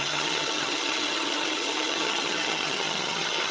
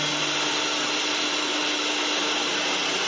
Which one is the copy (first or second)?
first